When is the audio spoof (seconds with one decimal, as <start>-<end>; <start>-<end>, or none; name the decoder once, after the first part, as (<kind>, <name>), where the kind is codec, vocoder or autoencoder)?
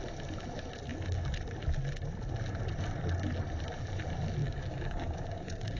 4.4-5.8 (codec, DAC)